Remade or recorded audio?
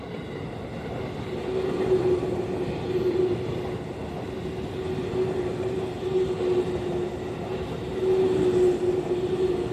recorded